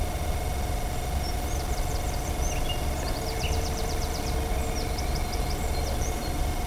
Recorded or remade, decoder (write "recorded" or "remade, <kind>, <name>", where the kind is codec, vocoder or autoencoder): remade, vocoder, BigVGAN v2